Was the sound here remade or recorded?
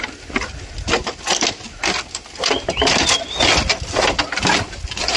recorded